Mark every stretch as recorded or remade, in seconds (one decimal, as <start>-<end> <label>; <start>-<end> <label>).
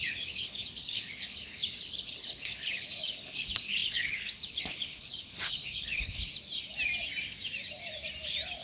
0.0-6.3 remade; 6.3-8.6 recorded